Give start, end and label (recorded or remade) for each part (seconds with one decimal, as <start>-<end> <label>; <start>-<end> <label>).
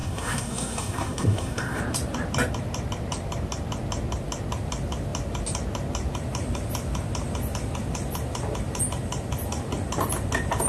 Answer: 0.0-1.8 remade; 1.8-10.7 recorded